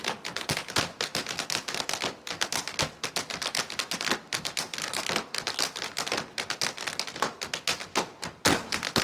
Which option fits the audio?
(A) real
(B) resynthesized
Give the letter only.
A